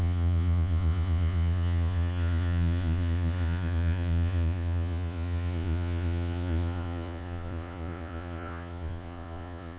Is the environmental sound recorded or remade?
remade